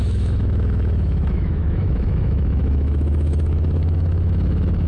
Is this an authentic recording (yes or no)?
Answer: no